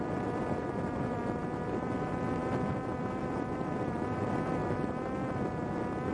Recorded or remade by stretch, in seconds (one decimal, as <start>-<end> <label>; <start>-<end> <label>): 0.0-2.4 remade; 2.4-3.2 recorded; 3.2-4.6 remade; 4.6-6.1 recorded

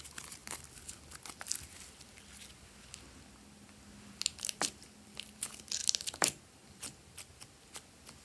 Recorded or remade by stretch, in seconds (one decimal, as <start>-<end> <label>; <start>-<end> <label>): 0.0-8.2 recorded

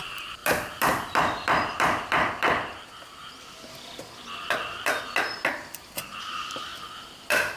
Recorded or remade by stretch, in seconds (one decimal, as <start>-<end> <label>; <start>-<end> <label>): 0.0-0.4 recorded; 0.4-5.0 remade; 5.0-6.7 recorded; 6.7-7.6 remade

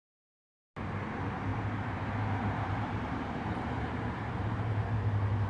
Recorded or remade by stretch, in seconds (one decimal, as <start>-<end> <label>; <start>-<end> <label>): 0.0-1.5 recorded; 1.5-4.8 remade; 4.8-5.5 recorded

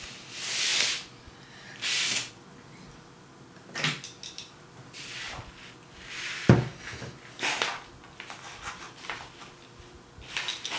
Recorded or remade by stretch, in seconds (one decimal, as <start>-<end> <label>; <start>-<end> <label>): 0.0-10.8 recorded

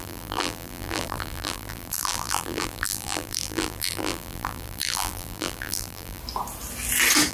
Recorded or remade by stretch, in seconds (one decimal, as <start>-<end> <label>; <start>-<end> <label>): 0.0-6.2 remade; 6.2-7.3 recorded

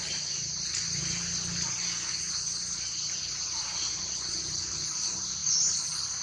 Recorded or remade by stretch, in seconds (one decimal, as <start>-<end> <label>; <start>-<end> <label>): 0.0-1.0 remade; 1.0-4.7 recorded; 4.7-6.2 remade